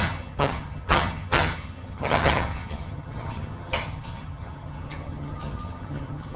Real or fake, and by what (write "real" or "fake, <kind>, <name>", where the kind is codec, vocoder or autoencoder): fake, vocoder, HiFi-GAN